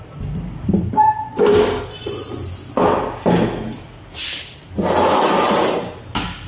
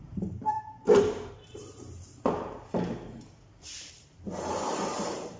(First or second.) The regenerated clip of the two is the second